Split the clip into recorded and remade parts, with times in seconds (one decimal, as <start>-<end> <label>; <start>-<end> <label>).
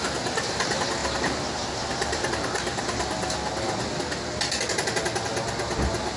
0.0-6.2 recorded